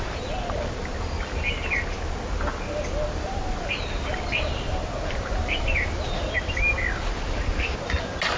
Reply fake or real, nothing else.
real